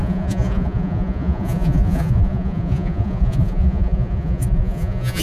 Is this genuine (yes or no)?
no